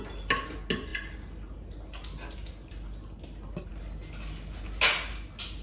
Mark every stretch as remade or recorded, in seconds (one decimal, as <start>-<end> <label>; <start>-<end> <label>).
0.0-5.6 recorded

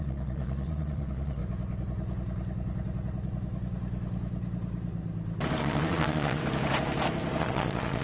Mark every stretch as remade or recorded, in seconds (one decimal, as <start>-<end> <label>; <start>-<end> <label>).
0.0-1.4 remade; 1.4-5.6 recorded; 5.6-6.4 remade; 6.4-7.4 recorded; 7.4-8.0 remade

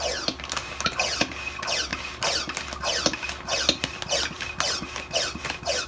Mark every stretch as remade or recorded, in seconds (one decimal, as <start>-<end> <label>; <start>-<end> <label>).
0.0-5.9 recorded

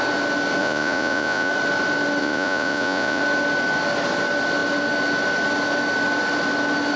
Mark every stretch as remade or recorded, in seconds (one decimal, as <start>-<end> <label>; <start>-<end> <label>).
0.0-0.6 recorded; 0.6-1.5 remade; 1.5-2.2 recorded; 2.2-3.2 remade; 3.2-7.0 recorded

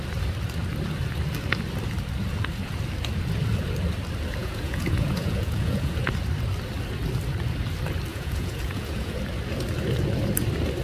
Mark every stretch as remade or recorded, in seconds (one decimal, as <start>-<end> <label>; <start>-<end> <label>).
0.0-4.4 recorded; 4.4-6.1 remade; 6.1-8.1 recorded; 8.1-9.2 remade; 9.2-10.8 recorded

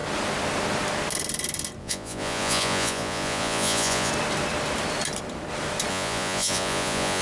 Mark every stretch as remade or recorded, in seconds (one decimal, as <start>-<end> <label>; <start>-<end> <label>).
0.0-1.8 recorded; 1.8-4.1 remade; 4.1-5.9 recorded; 5.9-7.2 remade

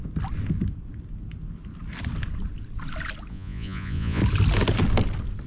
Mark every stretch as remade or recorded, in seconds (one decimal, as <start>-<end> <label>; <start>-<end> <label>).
0.0-3.3 recorded; 3.3-4.2 remade; 4.2-5.5 recorded

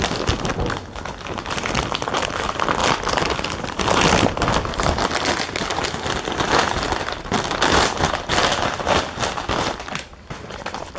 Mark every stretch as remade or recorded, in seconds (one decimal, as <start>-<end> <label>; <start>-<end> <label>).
0.0-11.0 recorded